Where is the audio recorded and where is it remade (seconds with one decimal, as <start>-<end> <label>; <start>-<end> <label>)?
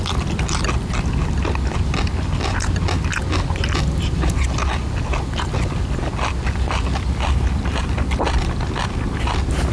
0.0-9.7 recorded